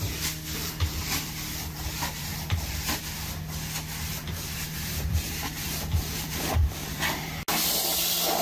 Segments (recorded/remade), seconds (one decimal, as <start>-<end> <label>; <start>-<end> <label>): 0.0-0.6 recorded; 0.6-3.0 remade; 3.0-4.1 recorded; 4.1-7.4 remade; 7.4-8.4 recorded